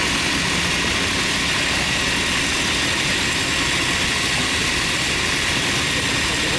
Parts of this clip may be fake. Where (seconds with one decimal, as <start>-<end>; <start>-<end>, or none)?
4.6-6.1